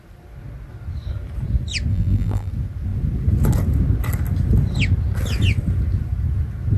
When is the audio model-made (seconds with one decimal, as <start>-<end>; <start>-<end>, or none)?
1.9-2.5